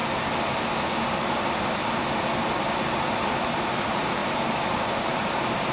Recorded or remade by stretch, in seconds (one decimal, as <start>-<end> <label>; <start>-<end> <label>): 0.0-2.9 recorded; 2.9-5.7 remade